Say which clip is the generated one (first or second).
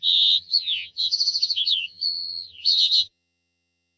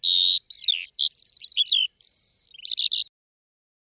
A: first